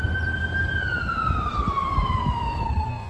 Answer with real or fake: real